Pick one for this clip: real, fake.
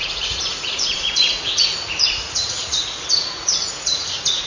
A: fake